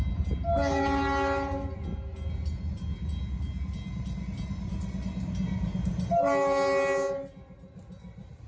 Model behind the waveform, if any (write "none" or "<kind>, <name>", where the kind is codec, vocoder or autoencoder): none